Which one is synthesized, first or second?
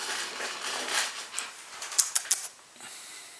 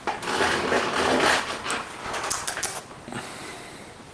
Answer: first